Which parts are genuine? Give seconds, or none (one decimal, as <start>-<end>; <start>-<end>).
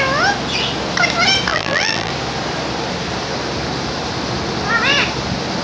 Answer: 0.0-1.5; 2.1-5.6